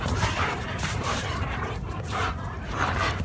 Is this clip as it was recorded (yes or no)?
no